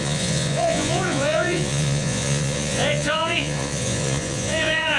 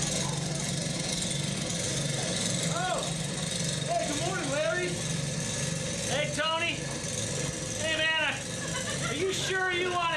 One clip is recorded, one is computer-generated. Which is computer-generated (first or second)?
first